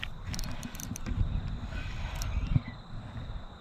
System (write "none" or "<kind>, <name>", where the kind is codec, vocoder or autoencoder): none